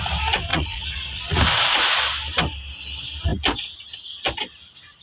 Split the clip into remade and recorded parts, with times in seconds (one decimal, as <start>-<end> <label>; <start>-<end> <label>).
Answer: 0.0-0.5 recorded; 0.5-1.4 remade; 1.4-5.0 recorded